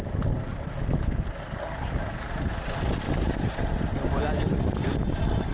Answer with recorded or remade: recorded